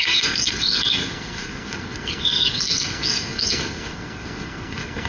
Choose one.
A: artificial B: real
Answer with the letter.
A